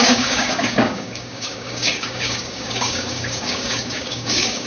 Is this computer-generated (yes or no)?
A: yes